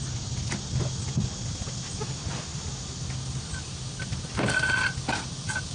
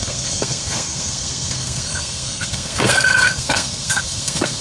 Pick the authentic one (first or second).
first